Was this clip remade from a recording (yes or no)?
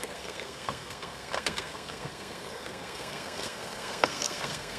yes